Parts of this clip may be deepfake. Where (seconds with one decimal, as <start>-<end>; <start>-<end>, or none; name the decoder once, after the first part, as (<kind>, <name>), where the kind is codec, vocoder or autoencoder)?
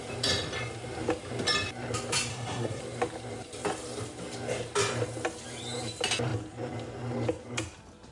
2.3-2.8 (codec, SNAC)